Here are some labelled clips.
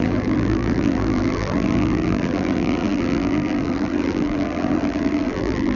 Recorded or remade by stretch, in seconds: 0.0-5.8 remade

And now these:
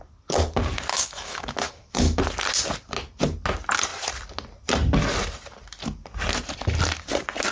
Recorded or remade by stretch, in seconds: 0.0-0.9 recorded; 0.9-2.2 remade; 2.2-7.5 recorded